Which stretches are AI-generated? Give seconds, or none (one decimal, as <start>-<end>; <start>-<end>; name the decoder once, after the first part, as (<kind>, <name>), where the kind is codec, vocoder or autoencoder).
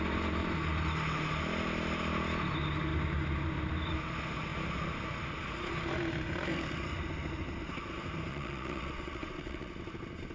8.3-9.7 (vocoder, WaveNeXt)